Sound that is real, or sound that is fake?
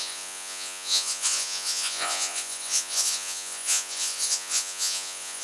fake